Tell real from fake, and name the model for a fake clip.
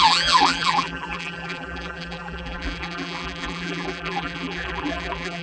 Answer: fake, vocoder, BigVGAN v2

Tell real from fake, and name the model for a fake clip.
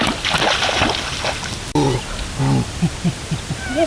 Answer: real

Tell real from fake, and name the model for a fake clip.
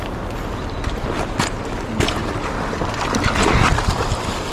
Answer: real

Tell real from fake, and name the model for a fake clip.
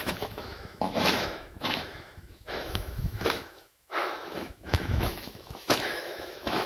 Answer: fake, autoencoder, DAC-VAE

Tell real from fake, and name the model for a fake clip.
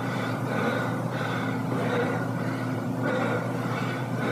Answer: fake, vocoder, BigVGAN v2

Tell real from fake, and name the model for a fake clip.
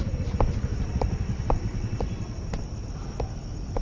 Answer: real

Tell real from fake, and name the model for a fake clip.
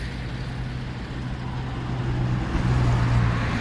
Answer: real